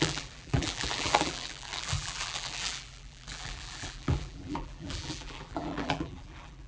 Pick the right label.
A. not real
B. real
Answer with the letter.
A